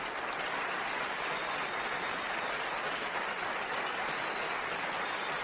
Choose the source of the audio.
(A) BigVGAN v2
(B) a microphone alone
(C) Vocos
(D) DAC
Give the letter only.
B